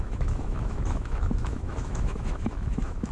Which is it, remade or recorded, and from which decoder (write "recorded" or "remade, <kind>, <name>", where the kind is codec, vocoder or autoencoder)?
remade, autoencoder, DAC-VAE